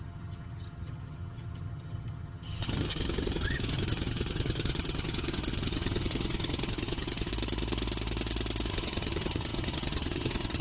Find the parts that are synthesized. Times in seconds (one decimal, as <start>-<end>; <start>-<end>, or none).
0.0-7.3; 8.7-10.6